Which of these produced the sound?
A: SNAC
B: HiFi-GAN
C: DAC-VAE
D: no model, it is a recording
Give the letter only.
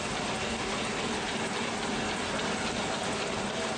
D